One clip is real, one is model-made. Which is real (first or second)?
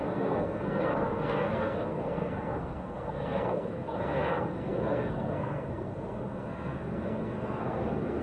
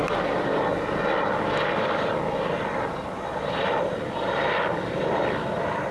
second